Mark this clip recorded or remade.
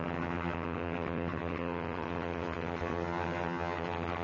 remade